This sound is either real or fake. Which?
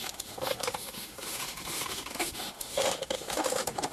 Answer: fake